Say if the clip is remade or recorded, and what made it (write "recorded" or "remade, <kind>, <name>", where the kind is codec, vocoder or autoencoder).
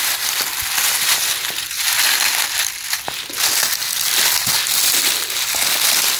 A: recorded